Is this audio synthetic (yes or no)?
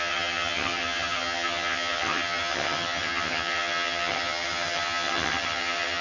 yes